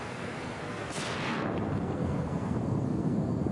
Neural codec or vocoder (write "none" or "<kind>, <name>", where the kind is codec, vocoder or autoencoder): codec, SNAC